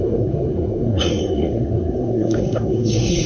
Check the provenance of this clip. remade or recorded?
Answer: remade